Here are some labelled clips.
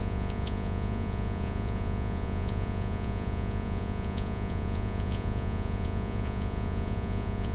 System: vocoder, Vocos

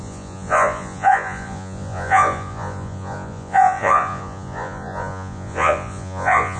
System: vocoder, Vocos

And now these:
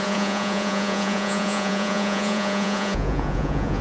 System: vocoder, Vocos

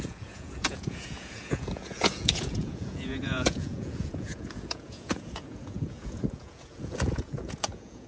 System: vocoder, Vocos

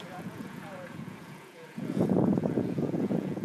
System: vocoder, Vocos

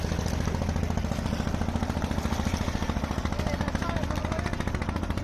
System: none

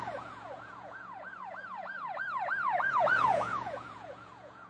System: vocoder, Vocos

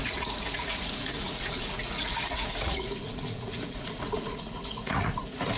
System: vocoder, Vocos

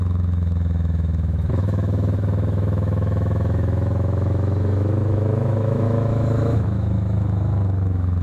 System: autoencoder, DAC-VAE